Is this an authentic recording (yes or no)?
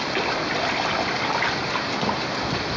yes